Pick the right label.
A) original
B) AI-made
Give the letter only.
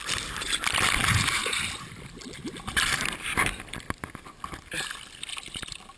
A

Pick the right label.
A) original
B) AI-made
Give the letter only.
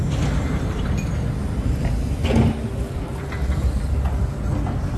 A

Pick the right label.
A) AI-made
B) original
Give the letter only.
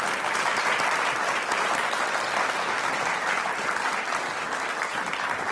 B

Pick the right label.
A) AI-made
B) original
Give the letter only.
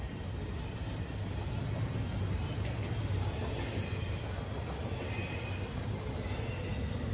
B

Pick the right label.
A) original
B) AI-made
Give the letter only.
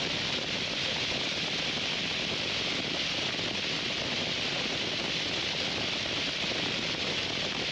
A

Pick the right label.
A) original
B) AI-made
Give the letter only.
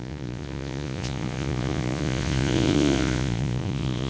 B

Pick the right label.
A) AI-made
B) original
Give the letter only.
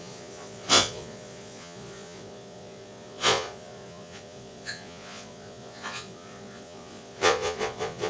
A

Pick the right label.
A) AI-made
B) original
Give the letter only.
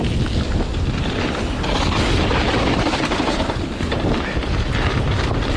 B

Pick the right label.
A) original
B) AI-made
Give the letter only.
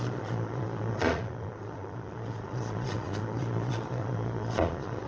B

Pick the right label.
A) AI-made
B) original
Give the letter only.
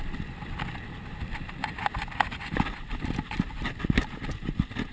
B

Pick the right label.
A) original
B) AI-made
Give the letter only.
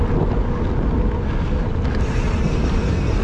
A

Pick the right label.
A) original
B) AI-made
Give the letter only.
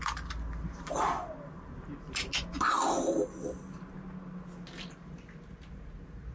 A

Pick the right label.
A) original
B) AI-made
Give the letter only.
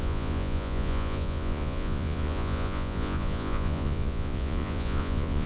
B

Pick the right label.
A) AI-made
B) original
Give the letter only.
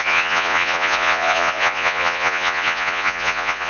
A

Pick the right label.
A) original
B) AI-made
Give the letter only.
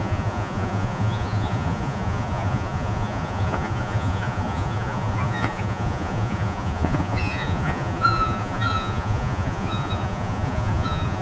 B